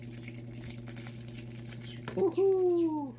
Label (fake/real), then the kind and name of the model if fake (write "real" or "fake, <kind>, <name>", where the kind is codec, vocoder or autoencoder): real